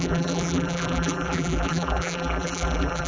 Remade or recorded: remade